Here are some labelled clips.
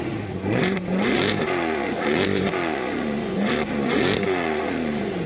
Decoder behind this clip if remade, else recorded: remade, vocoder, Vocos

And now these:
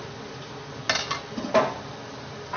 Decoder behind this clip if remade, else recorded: recorded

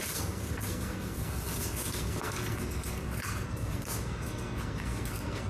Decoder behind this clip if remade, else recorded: remade, codec, SNAC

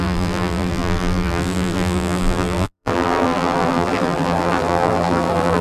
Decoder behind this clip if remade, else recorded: remade, vocoder, BigVGAN v2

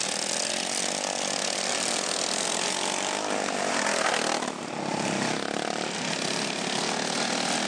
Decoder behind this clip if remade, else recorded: recorded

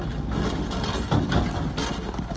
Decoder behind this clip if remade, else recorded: recorded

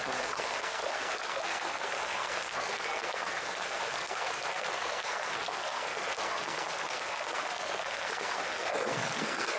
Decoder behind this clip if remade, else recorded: remade, codec, SNAC